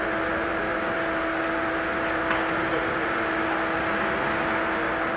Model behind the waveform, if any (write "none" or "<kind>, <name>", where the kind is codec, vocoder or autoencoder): none